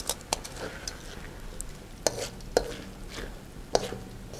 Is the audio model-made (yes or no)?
no